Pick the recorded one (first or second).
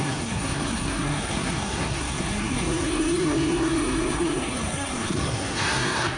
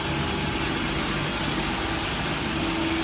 second